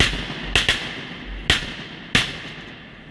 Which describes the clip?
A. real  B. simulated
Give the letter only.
A